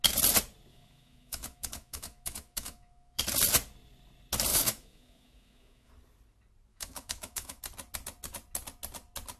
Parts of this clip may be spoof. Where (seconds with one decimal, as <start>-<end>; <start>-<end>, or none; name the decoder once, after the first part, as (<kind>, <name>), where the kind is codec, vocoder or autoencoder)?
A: 0.7-3.2 (autoencoder, DAC-VAE); 4.5-5.9; 6.7-7.6